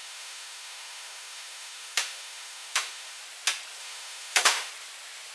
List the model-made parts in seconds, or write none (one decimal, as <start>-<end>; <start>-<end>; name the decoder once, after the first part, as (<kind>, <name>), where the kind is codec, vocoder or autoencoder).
0.0-3.2 (autoencoder, DAC-VAE); 3.8-4.7